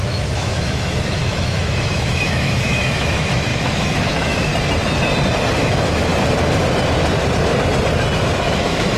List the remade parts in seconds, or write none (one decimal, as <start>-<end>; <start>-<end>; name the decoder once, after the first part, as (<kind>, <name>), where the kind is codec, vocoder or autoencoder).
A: 0.0-4.5 (autoencoder, DAC-VAE); 5.6-6.1; 8.5-9.0